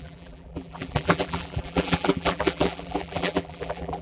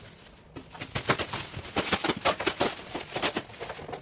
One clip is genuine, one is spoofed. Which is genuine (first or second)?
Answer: second